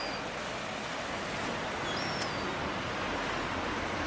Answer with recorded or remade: recorded